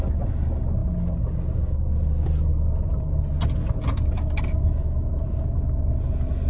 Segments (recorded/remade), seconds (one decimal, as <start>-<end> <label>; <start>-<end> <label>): 0.0-6.5 recorded